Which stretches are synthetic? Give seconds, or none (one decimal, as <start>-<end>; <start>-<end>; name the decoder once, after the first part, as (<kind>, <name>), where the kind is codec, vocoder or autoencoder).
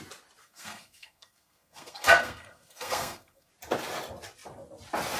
0.4-3.5 (codec, SNAC)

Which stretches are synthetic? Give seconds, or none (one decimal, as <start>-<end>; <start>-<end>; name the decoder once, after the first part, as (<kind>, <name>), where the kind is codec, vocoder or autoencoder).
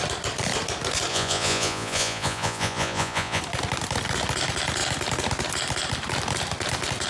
1.1-3.4 (vocoder, Vocos)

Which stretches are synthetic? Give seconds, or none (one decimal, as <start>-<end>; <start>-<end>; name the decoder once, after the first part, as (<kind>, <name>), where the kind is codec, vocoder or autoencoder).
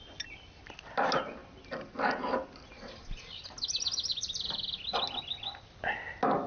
none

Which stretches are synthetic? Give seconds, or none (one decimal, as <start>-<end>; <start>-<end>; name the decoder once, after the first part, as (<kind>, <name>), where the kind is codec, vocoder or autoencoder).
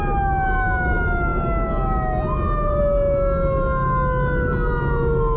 none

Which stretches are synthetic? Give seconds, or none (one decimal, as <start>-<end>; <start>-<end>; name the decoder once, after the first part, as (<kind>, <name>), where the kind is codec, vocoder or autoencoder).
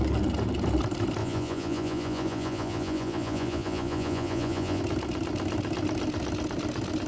1.2-4.8 (vocoder, Vocos)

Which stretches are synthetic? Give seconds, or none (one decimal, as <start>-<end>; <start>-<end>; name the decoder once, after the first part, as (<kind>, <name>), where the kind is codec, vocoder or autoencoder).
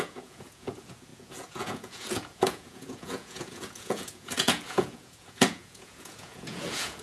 0.0-7.0 (vocoder, Vocos)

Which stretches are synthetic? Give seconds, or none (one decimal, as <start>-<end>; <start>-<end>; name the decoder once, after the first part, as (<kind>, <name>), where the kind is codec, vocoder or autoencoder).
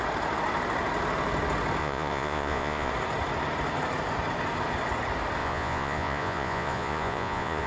1.8-2.9 (vocoder, Vocos); 5.4-7.7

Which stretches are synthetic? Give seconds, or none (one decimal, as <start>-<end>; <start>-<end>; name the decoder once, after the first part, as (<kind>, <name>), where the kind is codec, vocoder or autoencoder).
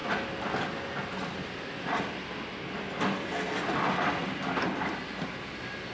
none